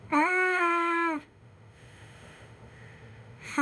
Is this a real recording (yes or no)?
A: no